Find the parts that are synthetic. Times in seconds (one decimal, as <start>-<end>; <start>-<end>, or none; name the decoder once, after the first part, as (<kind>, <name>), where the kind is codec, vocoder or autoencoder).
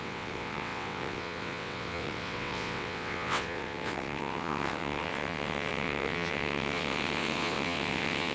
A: 0.0-8.3 (vocoder, WaveNeXt)